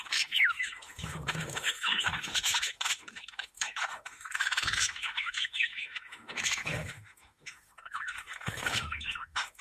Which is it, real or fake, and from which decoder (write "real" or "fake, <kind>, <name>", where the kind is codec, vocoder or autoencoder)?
fake, autoencoder, DAC-VAE